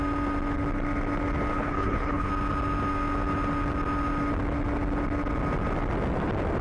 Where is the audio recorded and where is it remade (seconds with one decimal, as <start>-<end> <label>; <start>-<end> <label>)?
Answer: 0.0-1.5 recorded; 1.5-2.3 remade; 2.3-6.6 recorded